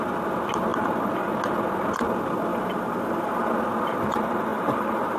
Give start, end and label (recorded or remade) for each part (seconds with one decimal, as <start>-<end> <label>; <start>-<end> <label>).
0.0-2.5 recorded; 2.5-3.5 remade; 3.5-4.5 recorded; 4.5-5.2 remade